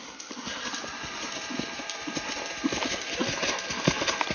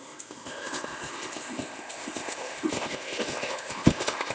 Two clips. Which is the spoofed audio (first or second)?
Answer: second